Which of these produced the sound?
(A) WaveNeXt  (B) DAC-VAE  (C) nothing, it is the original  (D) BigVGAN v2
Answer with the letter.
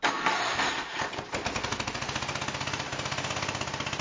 C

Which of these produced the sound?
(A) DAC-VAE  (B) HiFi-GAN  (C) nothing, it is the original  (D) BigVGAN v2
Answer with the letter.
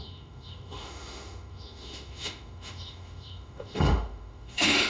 A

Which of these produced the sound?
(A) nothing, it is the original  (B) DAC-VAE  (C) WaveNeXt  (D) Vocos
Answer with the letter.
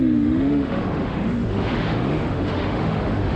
B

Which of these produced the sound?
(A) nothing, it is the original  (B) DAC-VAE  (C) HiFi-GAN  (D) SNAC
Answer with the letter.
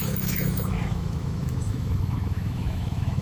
B